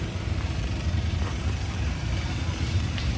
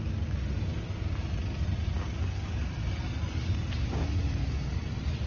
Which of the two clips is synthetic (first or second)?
first